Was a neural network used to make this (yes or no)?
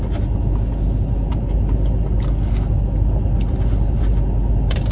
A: no